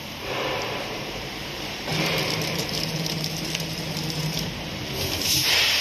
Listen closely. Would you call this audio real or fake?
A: fake